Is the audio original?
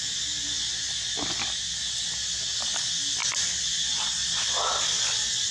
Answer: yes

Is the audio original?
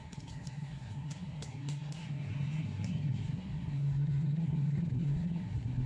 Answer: no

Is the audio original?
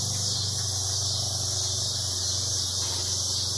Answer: yes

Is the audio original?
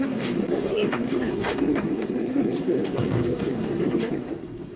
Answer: no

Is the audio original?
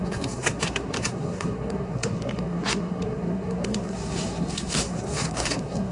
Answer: no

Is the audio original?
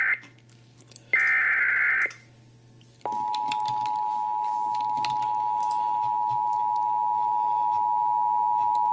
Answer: yes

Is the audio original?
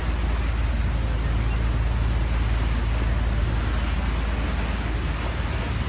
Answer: yes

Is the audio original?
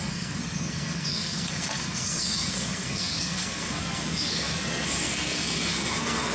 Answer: no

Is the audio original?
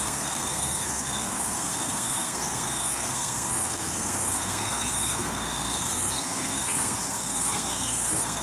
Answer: no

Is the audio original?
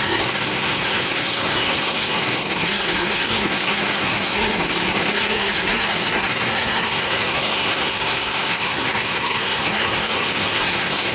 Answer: no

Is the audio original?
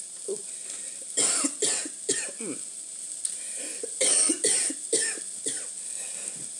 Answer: yes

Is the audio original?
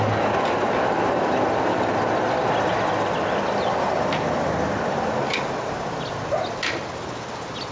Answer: yes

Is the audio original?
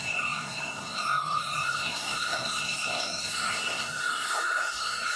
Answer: no